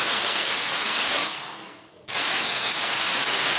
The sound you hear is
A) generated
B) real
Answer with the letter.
A